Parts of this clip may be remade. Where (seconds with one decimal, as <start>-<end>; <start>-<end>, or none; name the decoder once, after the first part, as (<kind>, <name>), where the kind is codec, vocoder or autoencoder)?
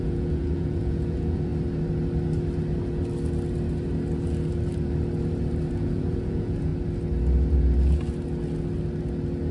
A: 0.0-1.5 (vocoder, Vocos); 5.7-6.7